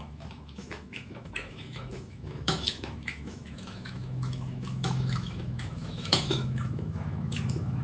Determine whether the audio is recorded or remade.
remade